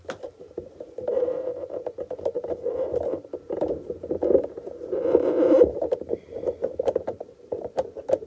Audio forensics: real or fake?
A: fake